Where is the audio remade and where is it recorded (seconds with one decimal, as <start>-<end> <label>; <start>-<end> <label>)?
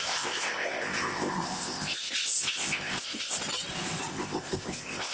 0.0-3.4 remade; 3.4-4.1 recorded; 4.1-5.1 remade